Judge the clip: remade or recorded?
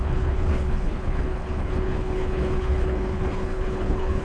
remade